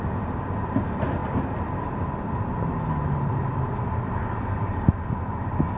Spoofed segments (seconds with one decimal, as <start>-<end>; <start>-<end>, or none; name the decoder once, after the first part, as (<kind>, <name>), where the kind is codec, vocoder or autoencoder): none